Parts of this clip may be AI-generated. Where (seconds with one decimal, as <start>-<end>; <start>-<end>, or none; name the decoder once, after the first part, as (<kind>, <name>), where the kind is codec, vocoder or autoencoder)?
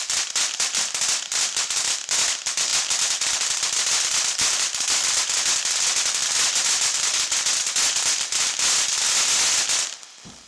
none